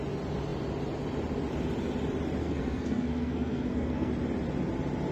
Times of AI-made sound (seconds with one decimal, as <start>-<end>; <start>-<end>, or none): 2.4-4.1